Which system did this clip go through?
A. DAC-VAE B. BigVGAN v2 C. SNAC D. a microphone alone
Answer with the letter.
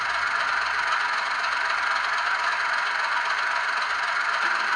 D